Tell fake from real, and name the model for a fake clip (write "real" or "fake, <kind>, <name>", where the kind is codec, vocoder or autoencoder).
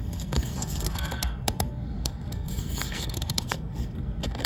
fake, codec, SNAC